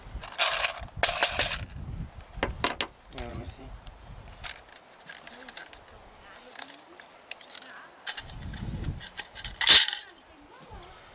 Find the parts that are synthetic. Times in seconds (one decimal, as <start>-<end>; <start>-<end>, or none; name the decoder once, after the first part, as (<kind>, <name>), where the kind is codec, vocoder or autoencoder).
3.3-4.4 (vocoder, Vocos)